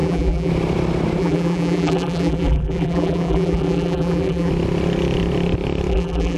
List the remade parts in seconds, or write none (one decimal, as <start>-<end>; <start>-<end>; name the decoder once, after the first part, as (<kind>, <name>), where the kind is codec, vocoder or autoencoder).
0.0-0.5 (vocoder, BigVGAN v2); 1.2-4.5; 5.9-6.4